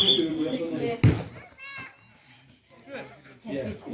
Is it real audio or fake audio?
real